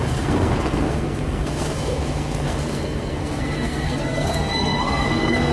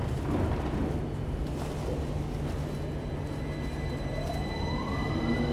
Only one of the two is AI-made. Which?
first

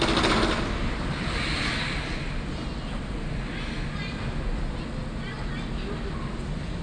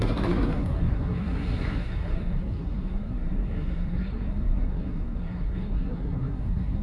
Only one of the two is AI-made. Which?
second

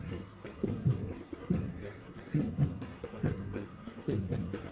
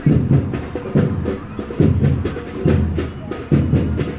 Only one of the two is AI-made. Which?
first